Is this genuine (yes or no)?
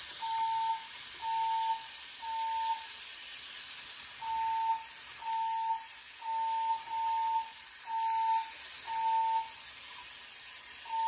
yes